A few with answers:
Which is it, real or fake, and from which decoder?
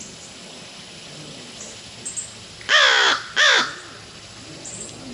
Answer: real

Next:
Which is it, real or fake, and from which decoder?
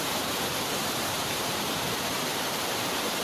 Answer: fake, vocoder, BigVGAN v2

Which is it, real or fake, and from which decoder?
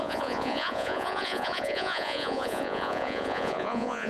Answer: fake, vocoder, Vocos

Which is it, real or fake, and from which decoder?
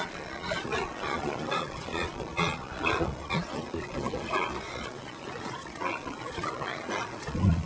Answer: fake, vocoder, Vocos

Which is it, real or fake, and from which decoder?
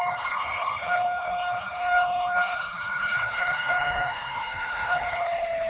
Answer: fake, codec, HILCodec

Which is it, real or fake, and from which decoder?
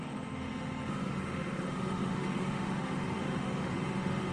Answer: fake, autoencoder, DAC-VAE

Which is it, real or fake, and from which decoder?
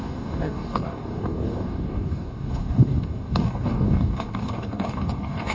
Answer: fake, codec, DAC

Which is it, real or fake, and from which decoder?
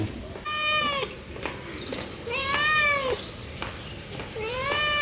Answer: real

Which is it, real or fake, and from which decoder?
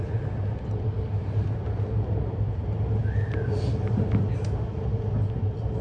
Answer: real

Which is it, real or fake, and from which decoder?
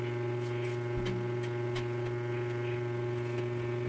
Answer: real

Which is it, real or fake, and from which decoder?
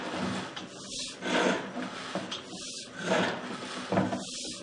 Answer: fake, vocoder, BigVGAN v2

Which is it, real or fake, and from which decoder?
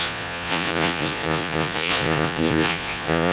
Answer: fake, vocoder, Vocos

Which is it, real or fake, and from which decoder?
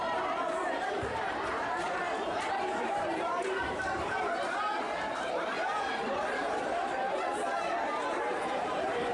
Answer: fake, vocoder, BigVGAN v2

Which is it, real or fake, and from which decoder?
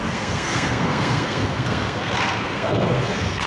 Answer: fake, codec, SNAC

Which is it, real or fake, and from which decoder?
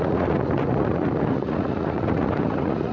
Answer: fake, vocoder, Vocos